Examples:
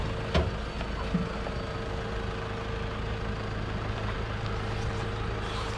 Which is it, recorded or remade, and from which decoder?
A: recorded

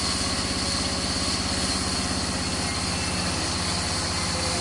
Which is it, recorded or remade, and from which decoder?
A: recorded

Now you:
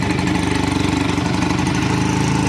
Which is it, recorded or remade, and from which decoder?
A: recorded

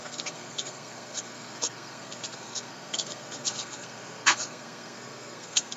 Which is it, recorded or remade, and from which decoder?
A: remade, codec, SNAC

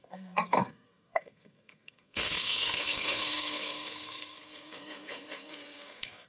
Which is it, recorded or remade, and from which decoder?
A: remade, codec, SNAC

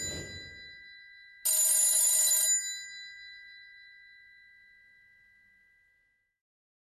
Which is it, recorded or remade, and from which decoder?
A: recorded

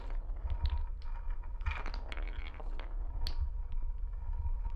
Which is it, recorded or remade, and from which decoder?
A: recorded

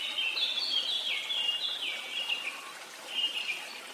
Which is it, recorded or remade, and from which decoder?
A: recorded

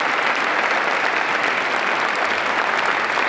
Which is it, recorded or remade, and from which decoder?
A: recorded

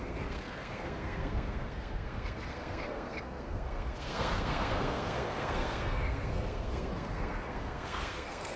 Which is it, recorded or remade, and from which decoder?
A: remade, codec, SNAC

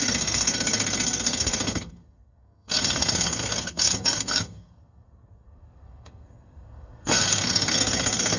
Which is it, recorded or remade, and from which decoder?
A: remade, codec, SNAC